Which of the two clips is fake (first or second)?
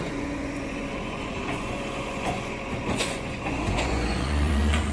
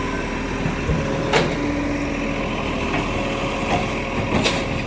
first